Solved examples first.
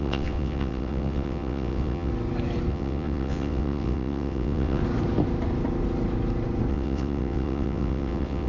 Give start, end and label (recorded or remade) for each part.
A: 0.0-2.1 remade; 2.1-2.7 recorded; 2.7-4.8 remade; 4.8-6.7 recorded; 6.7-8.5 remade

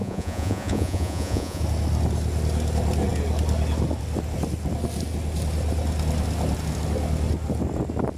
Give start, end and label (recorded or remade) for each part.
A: 0.0-1.6 remade; 1.6-8.2 recorded

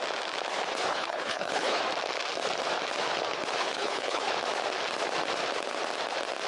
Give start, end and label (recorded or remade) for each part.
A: 0.0-0.9 recorded; 0.9-1.8 remade; 1.8-3.6 recorded; 3.6-4.3 remade; 4.3-6.5 recorded